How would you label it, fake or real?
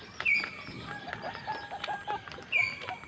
real